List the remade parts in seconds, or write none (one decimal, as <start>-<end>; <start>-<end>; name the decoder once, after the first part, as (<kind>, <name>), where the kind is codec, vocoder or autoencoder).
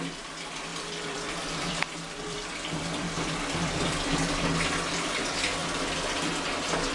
0.7-4.4 (vocoder, BigVGAN v2); 5.6-6.3